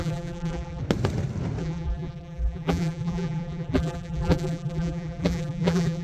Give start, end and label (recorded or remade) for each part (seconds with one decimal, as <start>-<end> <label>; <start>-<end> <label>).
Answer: 0.0-0.8 remade; 0.8-1.6 recorded; 1.6-6.0 remade